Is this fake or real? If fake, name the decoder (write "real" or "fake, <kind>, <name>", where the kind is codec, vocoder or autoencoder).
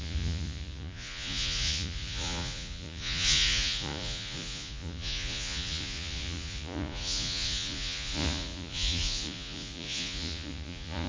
fake, vocoder, Vocos